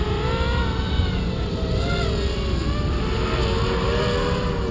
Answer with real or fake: real